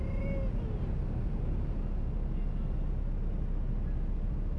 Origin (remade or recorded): recorded